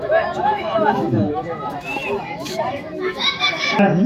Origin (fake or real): fake